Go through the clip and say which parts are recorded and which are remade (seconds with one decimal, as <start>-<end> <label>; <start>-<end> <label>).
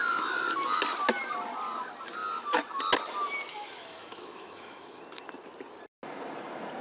0.0-3.5 recorded; 3.5-5.0 remade; 5.0-6.8 recorded